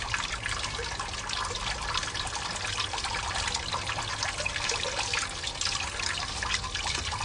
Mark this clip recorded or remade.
recorded